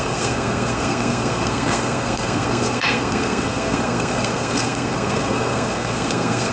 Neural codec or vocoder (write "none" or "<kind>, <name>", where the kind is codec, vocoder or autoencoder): codec, SNAC